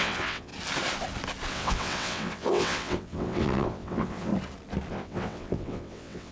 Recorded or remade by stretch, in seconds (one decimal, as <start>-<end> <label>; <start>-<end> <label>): 0.0-0.5 remade; 0.5-1.5 recorded; 1.5-4.3 remade; 4.3-4.9 recorded; 4.9-6.3 remade